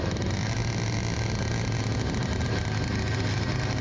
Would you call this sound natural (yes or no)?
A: yes